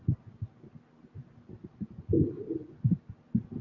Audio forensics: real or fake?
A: real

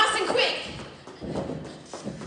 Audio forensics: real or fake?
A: real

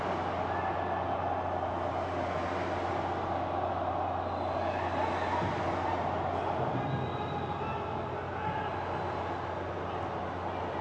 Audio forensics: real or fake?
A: real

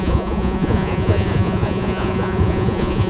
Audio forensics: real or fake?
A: fake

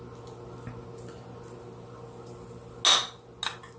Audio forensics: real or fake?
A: real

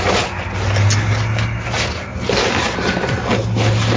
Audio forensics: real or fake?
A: real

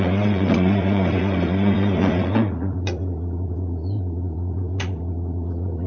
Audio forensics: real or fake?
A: fake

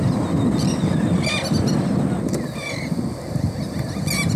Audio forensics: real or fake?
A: real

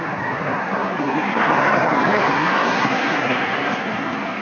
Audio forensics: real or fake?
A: fake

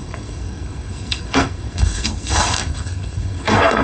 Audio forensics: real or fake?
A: fake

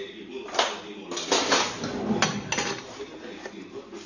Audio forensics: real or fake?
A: real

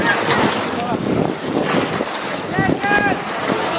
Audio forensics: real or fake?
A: real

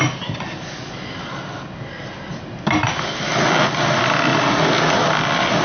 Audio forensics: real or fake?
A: real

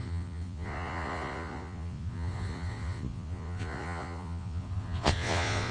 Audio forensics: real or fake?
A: fake